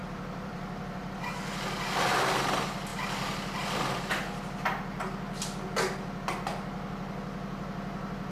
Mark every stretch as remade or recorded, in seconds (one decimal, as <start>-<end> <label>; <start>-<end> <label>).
0.0-1.2 remade; 1.2-8.3 recorded

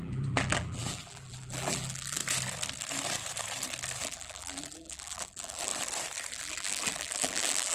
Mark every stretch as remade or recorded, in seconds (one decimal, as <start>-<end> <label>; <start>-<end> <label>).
0.0-2.2 remade; 2.2-4.0 recorded; 4.0-5.7 remade; 5.7-6.3 recorded; 6.3-7.7 remade

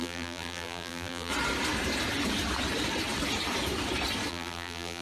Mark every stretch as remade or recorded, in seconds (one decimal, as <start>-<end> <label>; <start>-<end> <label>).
0.0-1.3 remade; 1.3-4.3 recorded; 4.3-5.0 remade

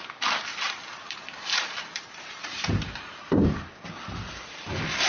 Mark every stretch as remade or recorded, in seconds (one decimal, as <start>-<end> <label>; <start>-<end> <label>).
0.0-0.5 recorded; 0.5-3.6 remade; 3.6-5.1 recorded

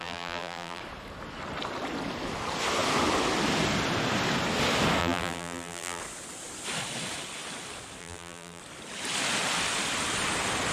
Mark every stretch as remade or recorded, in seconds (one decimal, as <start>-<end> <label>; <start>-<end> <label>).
0.0-0.8 remade; 0.8-5.0 recorded; 5.0-6.0 remade; 6.0-8.0 recorded; 8.0-8.6 remade; 8.6-10.7 recorded

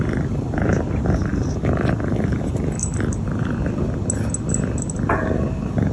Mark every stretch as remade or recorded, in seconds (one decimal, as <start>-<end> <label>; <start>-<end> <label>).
0.0-2.9 remade; 2.9-4.5 recorded; 4.5-5.9 remade

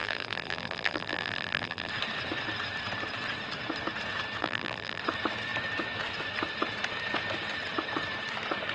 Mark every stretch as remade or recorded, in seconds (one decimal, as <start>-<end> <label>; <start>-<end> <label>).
0.0-1.9 remade; 1.9-4.4 recorded; 4.4-5.0 remade; 5.0-8.7 recorded

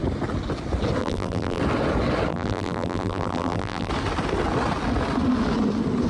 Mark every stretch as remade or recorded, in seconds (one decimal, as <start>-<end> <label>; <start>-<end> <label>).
0.0-1.0 recorded; 1.0-1.6 remade; 1.6-2.3 recorded; 2.3-3.9 remade; 3.9-6.1 recorded